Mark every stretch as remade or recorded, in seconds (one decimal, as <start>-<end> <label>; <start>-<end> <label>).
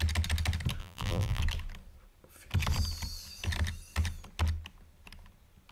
0.0-0.8 recorded; 0.8-1.4 remade; 1.4-5.7 recorded